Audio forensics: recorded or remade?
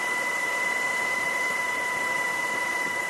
remade